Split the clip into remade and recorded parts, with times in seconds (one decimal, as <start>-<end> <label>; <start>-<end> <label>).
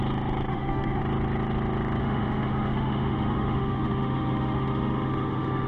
0.0-0.5 recorded; 0.5-1.0 remade; 1.0-2.0 recorded; 2.0-5.7 remade